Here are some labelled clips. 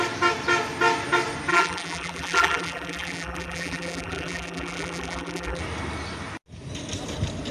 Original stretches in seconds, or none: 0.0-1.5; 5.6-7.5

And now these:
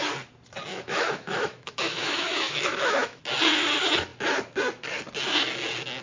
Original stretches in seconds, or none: 0.0-0.7; 3.2-6.0

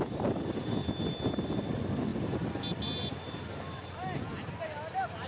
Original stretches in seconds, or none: 0.0-5.3

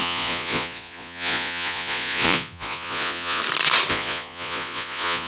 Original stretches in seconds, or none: 3.4-3.9

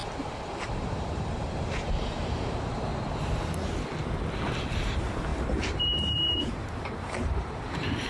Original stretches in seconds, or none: 0.0-0.7; 2.9-4.5

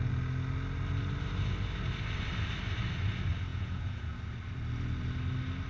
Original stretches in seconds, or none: 0.0-3.5; 4.2-5.7